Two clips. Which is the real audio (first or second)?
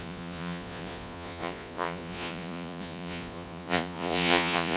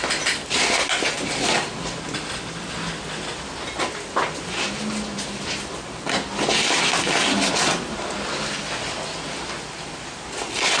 second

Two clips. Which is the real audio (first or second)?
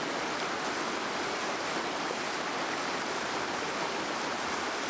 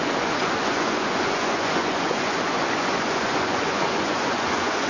first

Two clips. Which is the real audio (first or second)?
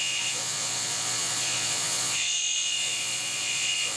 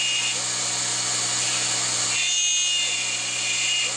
second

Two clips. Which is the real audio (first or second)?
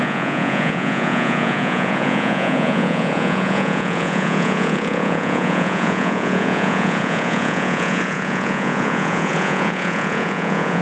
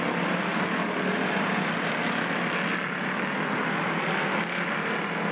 second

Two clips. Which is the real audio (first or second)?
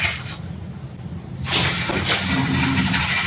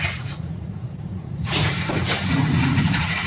first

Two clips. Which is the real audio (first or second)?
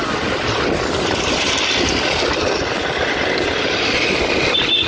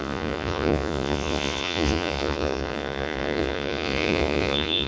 first